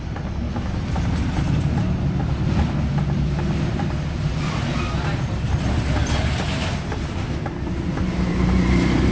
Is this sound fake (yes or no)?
no